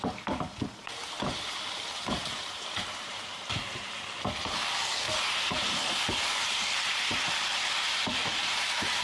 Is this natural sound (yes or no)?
no